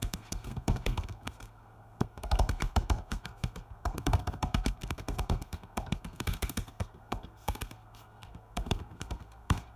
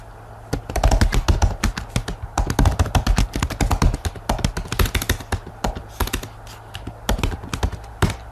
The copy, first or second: first